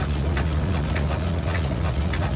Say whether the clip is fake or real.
fake